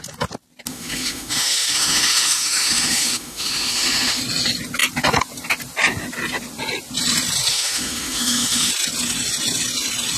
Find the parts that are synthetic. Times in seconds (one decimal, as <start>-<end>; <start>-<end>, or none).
0.7-4.2; 7.5-8.7